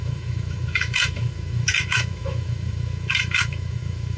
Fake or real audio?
fake